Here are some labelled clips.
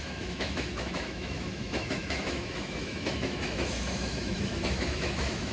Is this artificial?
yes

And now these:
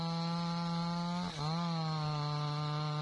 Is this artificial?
no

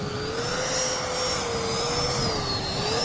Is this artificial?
no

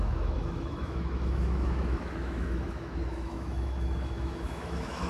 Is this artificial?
yes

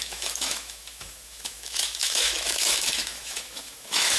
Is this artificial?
yes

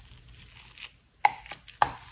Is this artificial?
no